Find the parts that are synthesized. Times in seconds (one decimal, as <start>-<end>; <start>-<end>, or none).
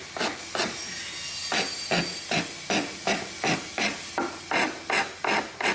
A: none